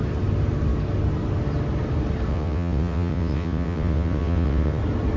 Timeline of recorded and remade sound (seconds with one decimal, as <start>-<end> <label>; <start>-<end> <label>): 0.0-2.3 recorded; 2.3-4.8 remade; 4.8-5.2 recorded